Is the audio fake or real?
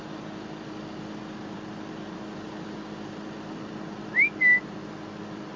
real